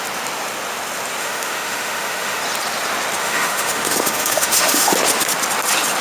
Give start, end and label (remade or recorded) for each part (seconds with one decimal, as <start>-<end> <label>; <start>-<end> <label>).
0.0-1.2 recorded; 1.2-2.4 remade; 2.4-3.2 recorded; 3.2-4.9 remade; 4.9-6.0 recorded